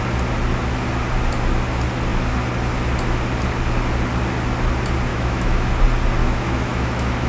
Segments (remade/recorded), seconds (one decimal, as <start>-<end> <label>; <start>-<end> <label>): 0.0-5.1 recorded; 5.1-5.7 remade; 5.7-6.2 recorded; 6.2-7.3 remade